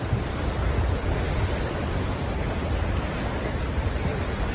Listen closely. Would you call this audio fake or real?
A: real